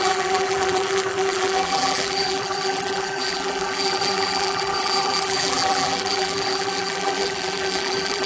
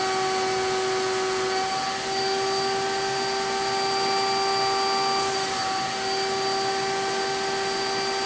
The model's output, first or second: first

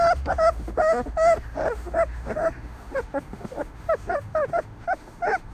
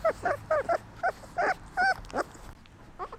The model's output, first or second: first